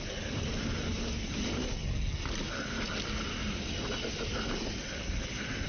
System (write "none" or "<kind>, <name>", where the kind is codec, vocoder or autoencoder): none